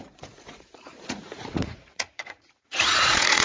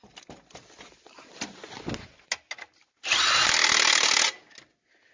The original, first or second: second